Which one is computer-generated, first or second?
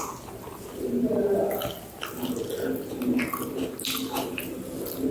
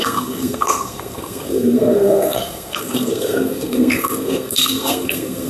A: second